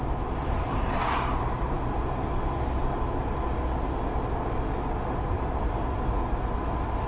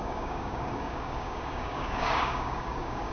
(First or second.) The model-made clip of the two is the second